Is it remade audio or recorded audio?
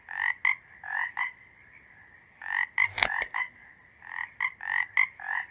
recorded